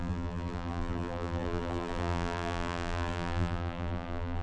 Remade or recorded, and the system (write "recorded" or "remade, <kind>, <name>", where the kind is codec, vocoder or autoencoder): remade, vocoder, BigVGAN v2